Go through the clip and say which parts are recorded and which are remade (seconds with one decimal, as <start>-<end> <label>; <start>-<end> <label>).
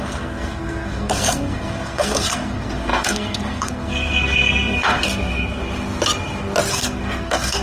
0.0-5.6 remade; 5.6-6.7 recorded; 6.7-7.6 remade